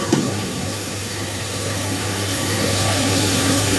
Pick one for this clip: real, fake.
fake